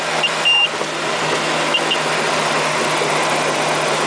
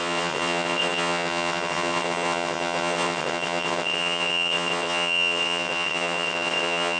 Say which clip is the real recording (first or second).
first